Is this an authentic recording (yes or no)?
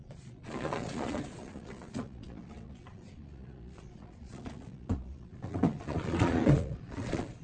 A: no